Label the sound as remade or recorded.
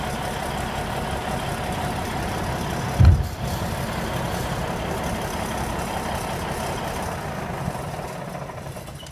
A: recorded